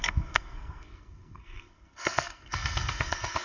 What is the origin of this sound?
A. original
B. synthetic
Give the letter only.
B